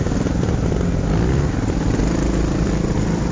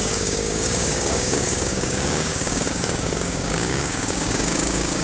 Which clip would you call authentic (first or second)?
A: first